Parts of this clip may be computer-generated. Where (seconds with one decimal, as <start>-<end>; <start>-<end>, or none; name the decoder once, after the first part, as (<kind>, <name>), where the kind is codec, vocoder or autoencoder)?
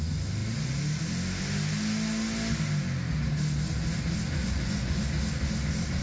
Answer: 4.4-5.0 (vocoder, Vocos)